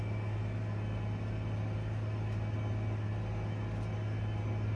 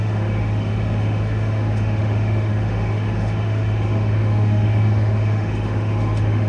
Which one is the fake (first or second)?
second